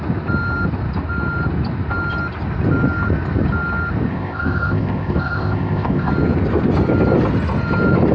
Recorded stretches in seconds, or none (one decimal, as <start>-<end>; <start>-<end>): 0.0-4.1; 6.1-8.1

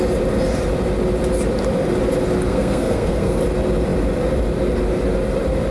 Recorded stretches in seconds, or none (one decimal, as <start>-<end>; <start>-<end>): 0.0-2.5; 3.4-5.7

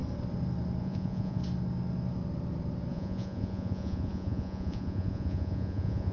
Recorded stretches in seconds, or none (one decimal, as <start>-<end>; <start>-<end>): 0.0-0.8; 1.4-2.9

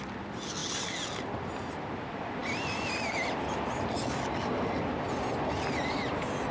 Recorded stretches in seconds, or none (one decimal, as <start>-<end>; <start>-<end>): 0.0-6.5

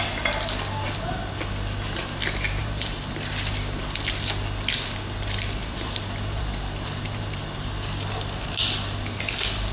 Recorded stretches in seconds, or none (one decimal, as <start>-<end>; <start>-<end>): 0.0-2.6; 3.3-5.6; 7.7-9.7

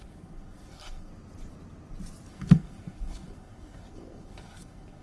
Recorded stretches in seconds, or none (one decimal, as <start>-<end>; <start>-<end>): 1.1-2.3

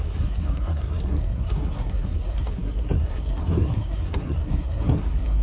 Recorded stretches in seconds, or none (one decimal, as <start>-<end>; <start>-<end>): none